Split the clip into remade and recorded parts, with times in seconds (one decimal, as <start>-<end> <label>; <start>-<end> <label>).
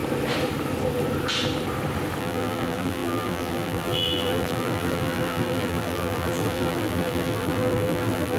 0.0-2.2 recorded; 2.2-8.4 remade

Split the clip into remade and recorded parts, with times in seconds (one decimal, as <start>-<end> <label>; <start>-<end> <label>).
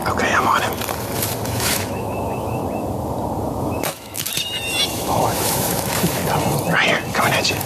0.0-1.4 recorded; 1.4-2.6 remade; 2.6-3.6 recorded; 3.6-4.3 remade; 4.3-4.9 recorded; 4.9-6.2 remade; 6.2-7.7 recorded